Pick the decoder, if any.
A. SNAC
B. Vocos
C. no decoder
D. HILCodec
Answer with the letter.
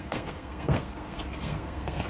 A